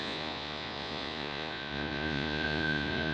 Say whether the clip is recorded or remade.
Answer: remade